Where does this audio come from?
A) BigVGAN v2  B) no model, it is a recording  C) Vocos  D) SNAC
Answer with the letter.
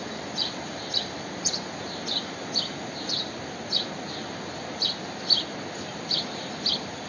B